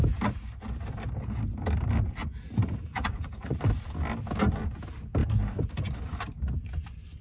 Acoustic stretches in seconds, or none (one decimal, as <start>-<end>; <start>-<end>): 0.0-2.2; 3.6-7.2

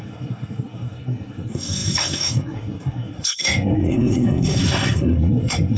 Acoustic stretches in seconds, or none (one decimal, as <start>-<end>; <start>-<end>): none